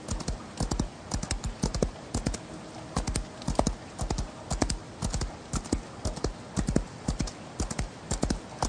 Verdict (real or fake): real